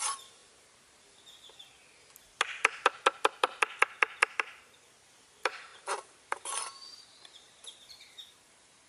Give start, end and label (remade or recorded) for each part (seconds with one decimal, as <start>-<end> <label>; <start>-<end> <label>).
0.0-0.4 remade; 0.4-4.4 recorded; 4.4-8.9 remade